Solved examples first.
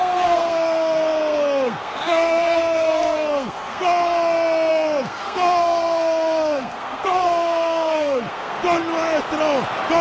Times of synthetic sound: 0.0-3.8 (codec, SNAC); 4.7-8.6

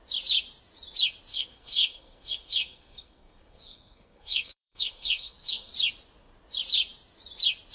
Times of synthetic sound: 1.3-5.7 (codec, SNAC)